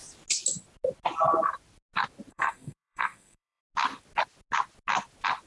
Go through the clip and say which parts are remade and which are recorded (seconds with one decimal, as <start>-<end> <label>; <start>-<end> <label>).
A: 0.0-2.3 recorded; 2.3-3.6 remade; 3.6-5.5 recorded